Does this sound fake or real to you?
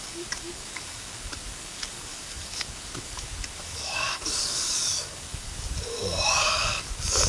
fake